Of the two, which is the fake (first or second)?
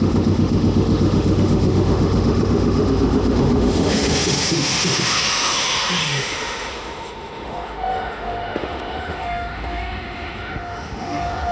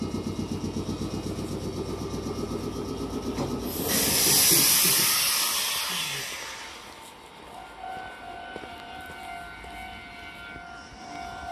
first